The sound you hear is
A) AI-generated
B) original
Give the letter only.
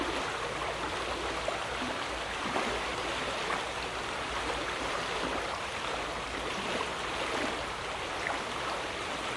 B